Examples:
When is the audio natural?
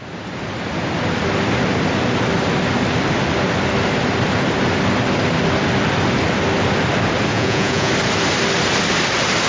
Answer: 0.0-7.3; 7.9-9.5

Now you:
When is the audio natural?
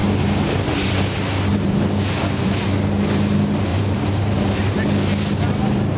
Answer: 0.7-1.5; 2.0-3.7; 4.7-6.0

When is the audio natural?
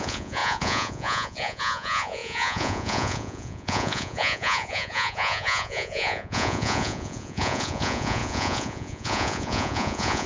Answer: none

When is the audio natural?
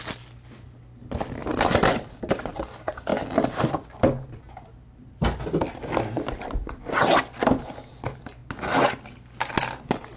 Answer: 0.0-10.2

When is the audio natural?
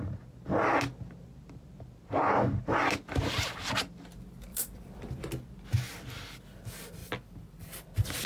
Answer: 0.0-4.5; 5.3-7.0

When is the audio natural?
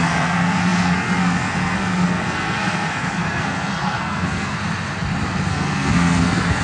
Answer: 4.6-5.5